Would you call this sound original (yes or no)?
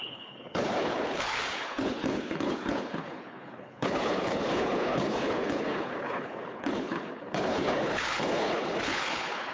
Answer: no